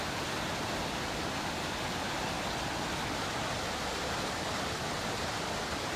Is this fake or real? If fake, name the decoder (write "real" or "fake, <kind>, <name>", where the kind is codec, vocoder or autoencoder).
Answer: real